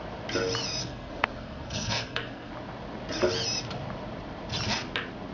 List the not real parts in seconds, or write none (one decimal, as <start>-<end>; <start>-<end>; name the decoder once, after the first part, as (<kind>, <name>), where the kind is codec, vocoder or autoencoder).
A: 0.8-2.5 (codec, SNAC)